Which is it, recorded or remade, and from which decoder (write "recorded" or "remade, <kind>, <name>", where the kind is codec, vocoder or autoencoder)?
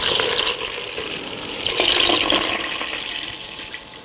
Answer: recorded